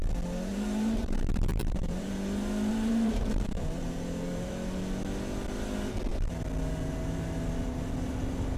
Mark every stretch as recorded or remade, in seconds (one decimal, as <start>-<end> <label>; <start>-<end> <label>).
0.0-0.5 recorded; 0.5-2.1 remade; 2.1-2.7 recorded; 2.7-4.5 remade; 4.5-8.6 recorded